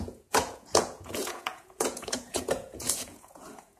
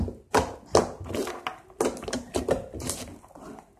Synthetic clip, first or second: first